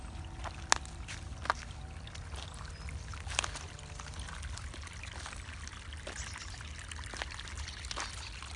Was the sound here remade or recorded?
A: recorded